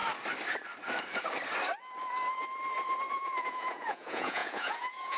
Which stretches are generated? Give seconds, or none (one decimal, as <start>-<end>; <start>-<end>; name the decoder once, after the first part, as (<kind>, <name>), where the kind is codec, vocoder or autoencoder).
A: 3.1-5.2 (vocoder, Vocos)